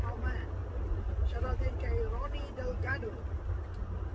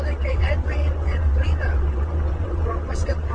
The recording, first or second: first